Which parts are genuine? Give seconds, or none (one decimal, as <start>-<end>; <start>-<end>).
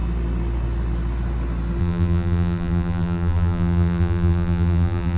0.0-1.8